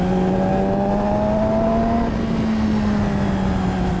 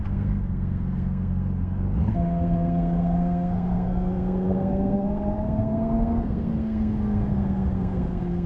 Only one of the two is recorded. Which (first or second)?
first